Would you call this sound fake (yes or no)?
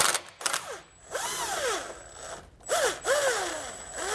no